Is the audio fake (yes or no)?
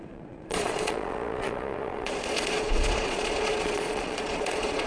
yes